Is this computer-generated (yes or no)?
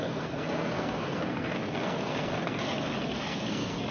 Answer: yes